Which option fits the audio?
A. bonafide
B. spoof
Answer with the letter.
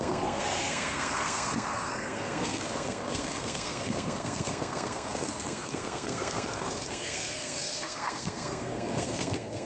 B